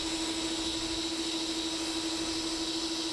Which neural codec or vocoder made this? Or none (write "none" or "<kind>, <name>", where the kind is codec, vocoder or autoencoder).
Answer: none